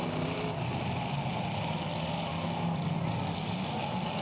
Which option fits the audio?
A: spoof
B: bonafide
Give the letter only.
B